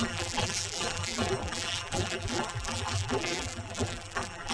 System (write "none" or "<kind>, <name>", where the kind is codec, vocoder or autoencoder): vocoder, BigVGAN v2